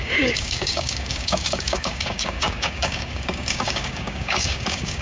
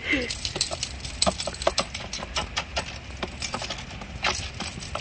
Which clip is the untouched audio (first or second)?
second